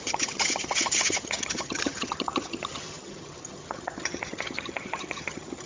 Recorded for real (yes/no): no